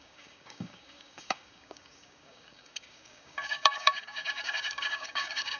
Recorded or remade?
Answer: remade